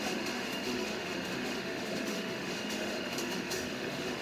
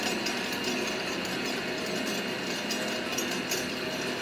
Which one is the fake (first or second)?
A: first